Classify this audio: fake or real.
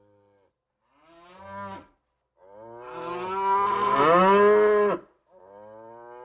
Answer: real